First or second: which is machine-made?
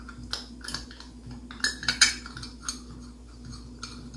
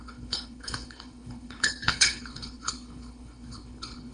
second